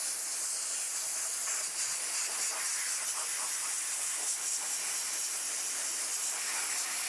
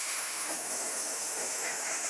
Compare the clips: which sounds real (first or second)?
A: first